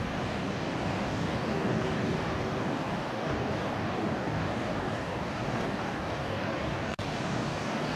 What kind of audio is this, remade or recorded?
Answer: remade